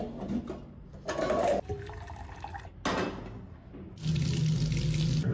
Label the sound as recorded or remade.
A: recorded